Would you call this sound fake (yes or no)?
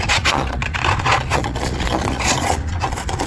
yes